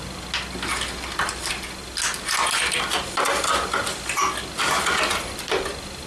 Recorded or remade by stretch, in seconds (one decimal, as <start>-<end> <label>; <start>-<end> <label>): 0.0-6.1 recorded